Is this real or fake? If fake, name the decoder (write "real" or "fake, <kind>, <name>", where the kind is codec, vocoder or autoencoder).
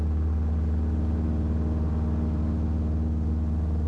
real